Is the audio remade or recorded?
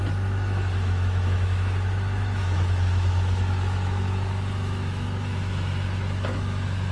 remade